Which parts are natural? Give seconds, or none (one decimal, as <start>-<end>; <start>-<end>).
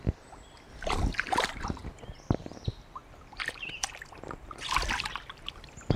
1.8-2.4; 3.0-5.1